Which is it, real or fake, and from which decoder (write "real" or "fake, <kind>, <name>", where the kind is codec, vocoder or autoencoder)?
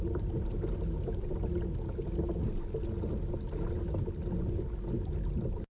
real